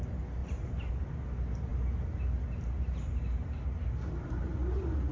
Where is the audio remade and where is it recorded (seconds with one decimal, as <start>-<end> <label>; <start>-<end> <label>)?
0.0-5.1 recorded